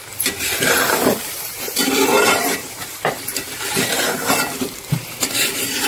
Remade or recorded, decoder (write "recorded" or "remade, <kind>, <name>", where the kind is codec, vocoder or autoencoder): remade, vocoder, BigVGAN v2